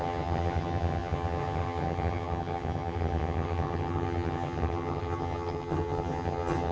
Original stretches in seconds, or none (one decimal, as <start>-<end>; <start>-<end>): none